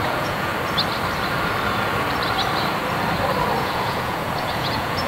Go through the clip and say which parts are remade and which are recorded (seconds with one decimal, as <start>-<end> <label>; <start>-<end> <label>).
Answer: 0.0-0.5 remade; 0.5-3.6 recorded; 3.6-5.1 remade